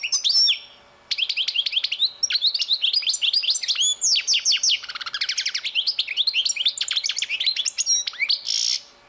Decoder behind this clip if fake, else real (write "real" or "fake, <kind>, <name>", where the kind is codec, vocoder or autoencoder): real